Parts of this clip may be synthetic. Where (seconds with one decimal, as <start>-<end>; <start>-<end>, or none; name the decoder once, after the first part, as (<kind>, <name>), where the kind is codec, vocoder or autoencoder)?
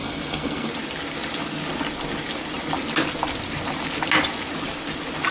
0.0-0.7 (codec, SNAC)